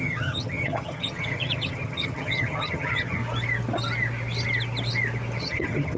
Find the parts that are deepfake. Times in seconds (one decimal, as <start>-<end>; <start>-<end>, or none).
0.0-3.2; 5.4-6.0